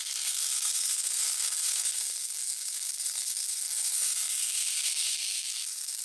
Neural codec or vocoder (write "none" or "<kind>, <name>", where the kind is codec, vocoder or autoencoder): codec, SNAC